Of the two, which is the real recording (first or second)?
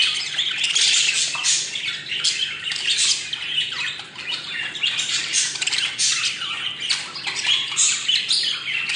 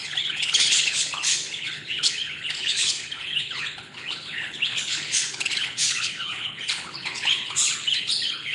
first